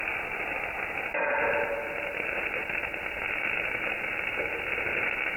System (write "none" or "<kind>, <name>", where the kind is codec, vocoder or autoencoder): none